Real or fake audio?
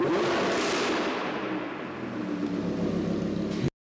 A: real